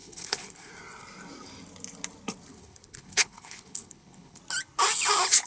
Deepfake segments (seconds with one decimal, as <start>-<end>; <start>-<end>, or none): 0.0-0.7; 2.5-4.4